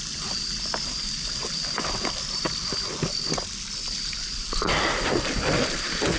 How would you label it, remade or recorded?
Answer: recorded